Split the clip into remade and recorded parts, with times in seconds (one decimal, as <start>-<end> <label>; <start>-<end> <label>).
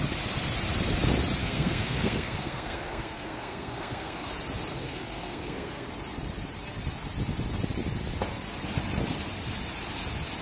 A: 0.0-1.4 recorded; 1.4-4.3 remade; 4.3-4.7 recorded; 4.7-5.9 remade; 5.9-10.4 recorded